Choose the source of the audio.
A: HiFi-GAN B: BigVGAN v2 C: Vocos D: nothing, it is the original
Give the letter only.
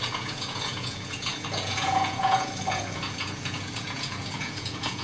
C